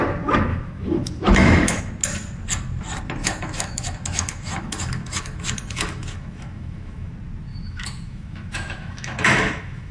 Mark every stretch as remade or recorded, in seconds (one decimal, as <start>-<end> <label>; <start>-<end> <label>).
0.0-0.5 recorded; 0.5-1.9 remade; 1.9-3.2 recorded; 3.2-7.1 remade; 7.1-7.5 recorded; 7.5-9.9 remade